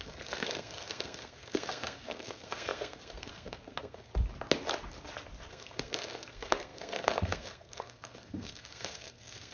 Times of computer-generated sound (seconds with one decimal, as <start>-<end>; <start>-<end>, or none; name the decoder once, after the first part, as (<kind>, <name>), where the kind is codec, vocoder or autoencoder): 0.0-4.1 (codec, SNAC); 5.5-9.5